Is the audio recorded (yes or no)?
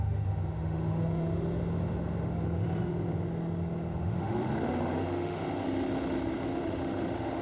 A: no